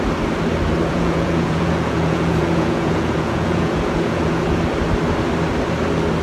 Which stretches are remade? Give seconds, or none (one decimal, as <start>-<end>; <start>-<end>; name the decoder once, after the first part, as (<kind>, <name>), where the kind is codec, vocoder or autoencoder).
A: 0.9-4.6 (vocoder, Vocos)